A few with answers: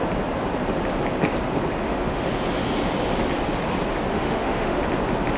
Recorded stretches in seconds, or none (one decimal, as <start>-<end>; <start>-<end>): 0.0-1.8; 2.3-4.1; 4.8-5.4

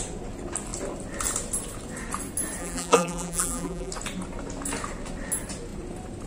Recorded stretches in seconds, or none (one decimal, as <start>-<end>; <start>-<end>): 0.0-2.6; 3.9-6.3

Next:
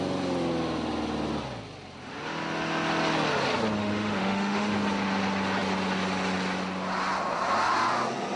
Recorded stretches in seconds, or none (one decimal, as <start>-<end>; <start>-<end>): 0.0-3.8; 4.7-8.4

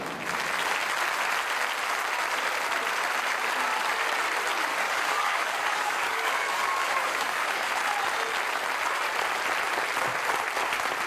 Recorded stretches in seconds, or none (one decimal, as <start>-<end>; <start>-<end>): 0.0-4.7; 7.7-11.1

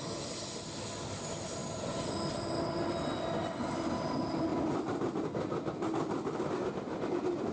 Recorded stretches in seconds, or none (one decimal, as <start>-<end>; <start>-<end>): 0.0-7.5

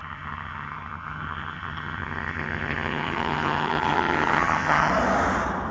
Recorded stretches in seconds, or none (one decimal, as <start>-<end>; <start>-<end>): 4.9-5.7